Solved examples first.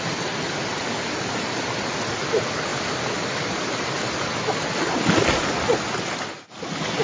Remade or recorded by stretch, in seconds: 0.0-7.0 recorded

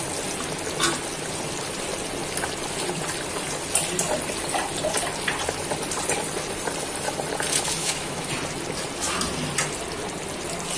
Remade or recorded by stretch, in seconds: 0.0-7.8 recorded; 7.8-8.3 remade; 8.3-10.8 recorded

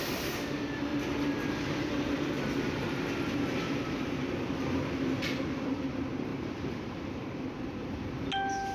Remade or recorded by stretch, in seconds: 0.0-6.3 recorded; 6.3-7.4 remade; 7.4-8.7 recorded

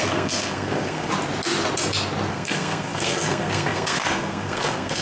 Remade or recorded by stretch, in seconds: 0.0-1.1 remade; 1.1-2.3 recorded; 2.3-5.0 remade

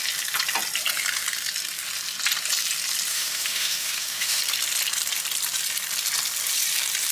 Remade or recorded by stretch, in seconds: 0.0-3.1 recorded; 3.1-4.4 remade; 4.4-7.1 recorded

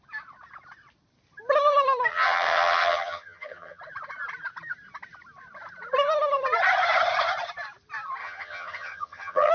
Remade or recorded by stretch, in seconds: 0.0-2.1 recorded; 2.1-3.8 remade; 3.8-8.2 recorded; 8.2-9.5 remade

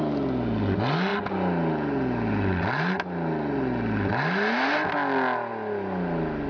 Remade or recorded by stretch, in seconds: 0.0-6.5 recorded